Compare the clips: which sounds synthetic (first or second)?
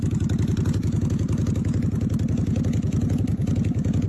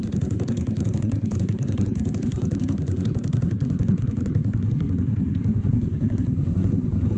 second